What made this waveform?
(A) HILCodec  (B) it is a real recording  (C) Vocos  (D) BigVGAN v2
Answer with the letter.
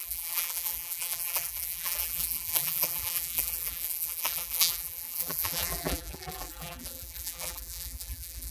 D